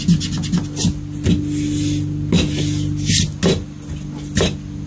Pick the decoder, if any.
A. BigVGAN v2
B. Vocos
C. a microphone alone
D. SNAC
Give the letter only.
C